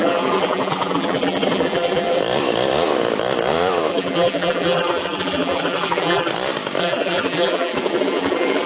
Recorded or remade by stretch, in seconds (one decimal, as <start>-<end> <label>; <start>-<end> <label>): 0.0-2.2 remade; 2.2-3.9 recorded; 3.9-6.3 remade; 6.3-6.8 recorded; 6.8-8.7 remade